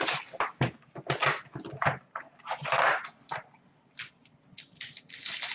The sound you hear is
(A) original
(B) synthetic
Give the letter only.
A